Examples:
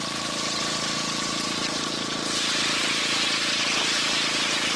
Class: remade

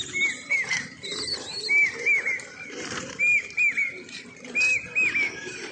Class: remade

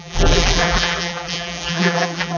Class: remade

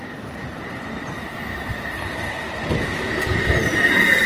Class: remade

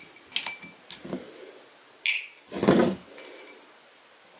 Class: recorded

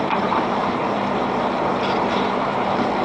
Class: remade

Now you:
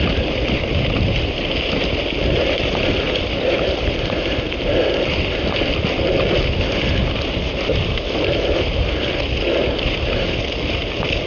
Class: recorded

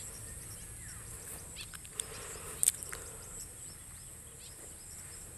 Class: recorded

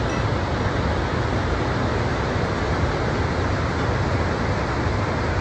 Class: recorded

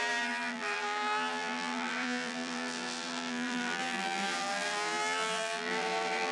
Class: remade